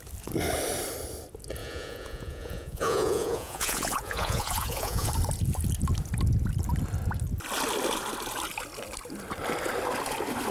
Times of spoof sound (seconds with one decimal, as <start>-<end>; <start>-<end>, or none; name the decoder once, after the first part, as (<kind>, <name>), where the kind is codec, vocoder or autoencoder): 1.6-5.1 (vocoder, Vocos)